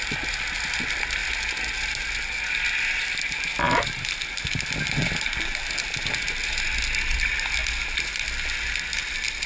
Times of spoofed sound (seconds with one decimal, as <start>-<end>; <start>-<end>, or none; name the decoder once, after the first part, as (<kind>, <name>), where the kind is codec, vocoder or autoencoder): 1.2-1.9 (vocoder, BigVGAN v2)